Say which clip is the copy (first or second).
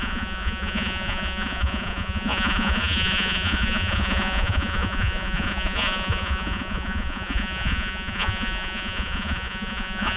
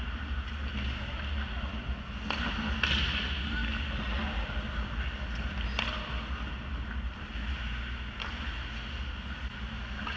first